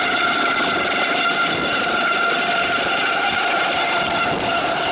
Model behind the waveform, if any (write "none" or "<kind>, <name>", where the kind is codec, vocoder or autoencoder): none